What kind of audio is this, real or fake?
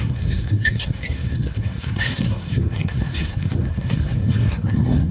fake